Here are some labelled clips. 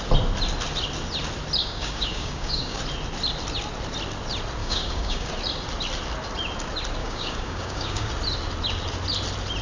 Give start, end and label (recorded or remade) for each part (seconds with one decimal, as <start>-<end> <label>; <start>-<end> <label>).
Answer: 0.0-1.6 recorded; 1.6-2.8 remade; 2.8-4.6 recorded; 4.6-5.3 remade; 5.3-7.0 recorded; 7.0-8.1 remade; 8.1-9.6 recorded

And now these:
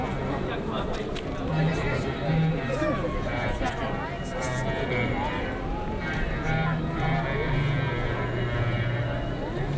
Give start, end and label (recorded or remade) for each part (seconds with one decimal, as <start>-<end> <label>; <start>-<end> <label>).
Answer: 0.0-9.8 recorded

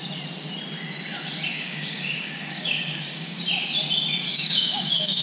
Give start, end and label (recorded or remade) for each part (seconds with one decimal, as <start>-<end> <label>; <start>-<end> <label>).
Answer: 0.0-1.5 recorded; 1.5-3.4 remade; 3.4-4.3 recorded; 4.3-5.2 remade

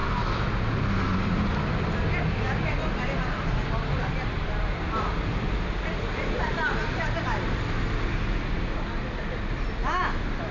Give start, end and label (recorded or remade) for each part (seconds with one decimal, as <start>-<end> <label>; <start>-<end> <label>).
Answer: 0.0-10.5 recorded

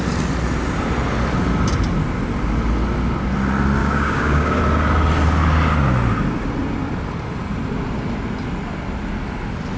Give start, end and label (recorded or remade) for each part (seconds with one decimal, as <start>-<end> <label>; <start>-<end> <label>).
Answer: 0.0-3.8 recorded; 3.8-4.6 remade; 4.6-9.8 recorded

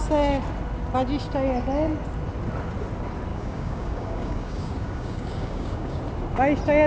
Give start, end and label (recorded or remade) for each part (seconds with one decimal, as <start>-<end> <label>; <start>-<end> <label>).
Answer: 0.0-3.3 recorded; 3.3-6.0 remade; 6.0-6.9 recorded